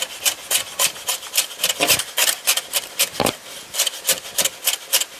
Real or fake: real